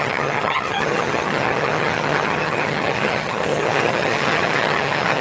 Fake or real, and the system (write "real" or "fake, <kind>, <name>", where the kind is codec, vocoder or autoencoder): fake, vocoder, HiFi-GAN